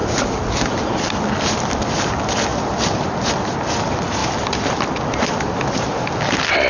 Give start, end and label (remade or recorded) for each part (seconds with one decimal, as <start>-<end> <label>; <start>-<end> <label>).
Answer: 0.0-2.5 recorded; 2.5-3.2 remade; 3.2-4.2 recorded; 4.2-5.5 remade; 5.5-6.7 recorded